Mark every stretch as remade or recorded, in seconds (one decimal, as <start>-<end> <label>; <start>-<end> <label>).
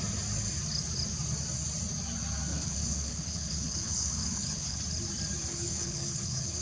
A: 0.0-2.5 recorded; 2.5-4.8 remade; 4.8-5.5 recorded; 5.5-6.6 remade